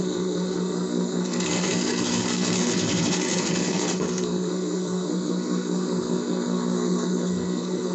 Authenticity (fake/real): fake